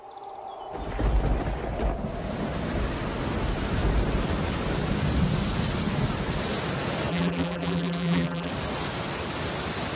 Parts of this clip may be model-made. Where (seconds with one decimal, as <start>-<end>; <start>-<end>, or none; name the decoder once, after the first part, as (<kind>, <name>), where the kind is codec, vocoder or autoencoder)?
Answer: 7.1-8.5 (vocoder, BigVGAN v2)